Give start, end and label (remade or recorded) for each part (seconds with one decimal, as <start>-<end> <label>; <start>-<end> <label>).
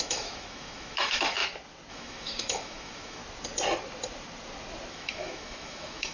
0.0-1.4 remade; 1.4-1.9 recorded; 1.9-3.2 remade; 3.2-4.9 recorded; 4.9-6.1 remade